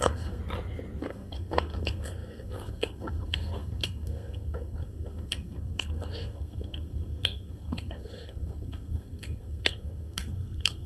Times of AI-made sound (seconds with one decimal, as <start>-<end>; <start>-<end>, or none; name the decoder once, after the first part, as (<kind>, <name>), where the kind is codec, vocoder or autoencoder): 0.0-0.4 (codec, SNAC); 1.0-10.9